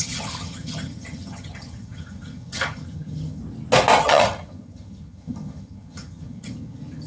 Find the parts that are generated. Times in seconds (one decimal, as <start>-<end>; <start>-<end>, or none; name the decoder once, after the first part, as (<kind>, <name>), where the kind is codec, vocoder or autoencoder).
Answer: 0.0-3.4 (vocoder, HiFi-GAN); 4.0-7.1